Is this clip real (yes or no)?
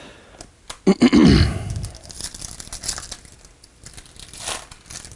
yes